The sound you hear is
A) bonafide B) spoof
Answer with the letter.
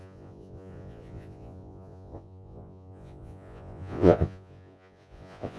B